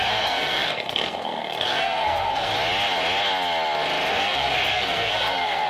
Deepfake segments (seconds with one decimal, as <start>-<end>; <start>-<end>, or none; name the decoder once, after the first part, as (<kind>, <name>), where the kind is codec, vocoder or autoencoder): 0.0-2.5 (codec, SNAC); 4.1-5.7